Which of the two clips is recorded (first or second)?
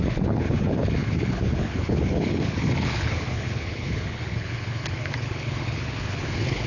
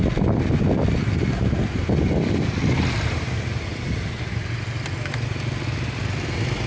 second